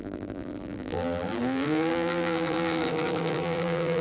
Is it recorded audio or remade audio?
remade